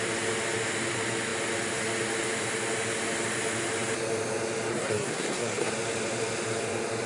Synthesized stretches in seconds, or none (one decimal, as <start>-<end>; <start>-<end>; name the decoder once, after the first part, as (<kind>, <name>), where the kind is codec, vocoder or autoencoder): 4.7-5.7 (codec, SNAC)